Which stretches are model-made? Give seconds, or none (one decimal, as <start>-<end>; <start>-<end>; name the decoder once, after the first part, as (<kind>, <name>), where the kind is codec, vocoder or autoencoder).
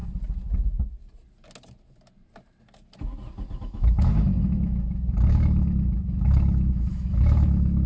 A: 3.6-7.9 (autoencoder, DAC-VAE)